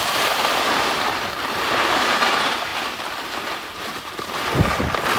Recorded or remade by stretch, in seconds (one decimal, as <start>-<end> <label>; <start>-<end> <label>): 0.0-2.7 remade; 2.7-5.2 recorded